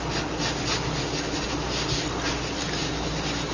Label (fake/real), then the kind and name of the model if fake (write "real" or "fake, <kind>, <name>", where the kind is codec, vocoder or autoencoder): real